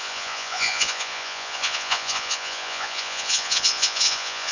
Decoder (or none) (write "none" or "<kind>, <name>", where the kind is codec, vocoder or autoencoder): vocoder, Vocos